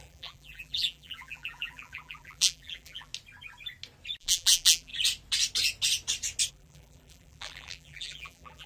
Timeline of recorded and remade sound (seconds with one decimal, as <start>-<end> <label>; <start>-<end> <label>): 0.0-3.1 remade; 3.1-4.2 recorded; 4.2-4.9 remade; 4.9-6.5 recorded; 6.5-8.7 remade